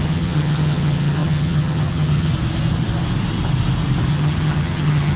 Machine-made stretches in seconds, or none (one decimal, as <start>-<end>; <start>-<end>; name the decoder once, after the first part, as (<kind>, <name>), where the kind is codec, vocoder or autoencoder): 0.0-2.3 (vocoder, HiFi-GAN); 4.1-5.2